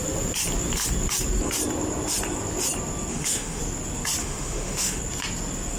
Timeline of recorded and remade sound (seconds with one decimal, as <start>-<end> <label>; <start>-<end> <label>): 0.0-3.1 recorded; 3.1-3.6 remade; 3.6-4.2 recorded; 4.2-5.0 remade; 5.0-5.8 recorded